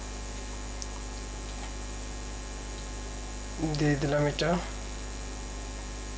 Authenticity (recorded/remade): recorded